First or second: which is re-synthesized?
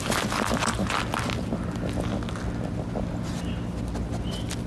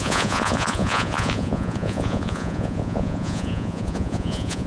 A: second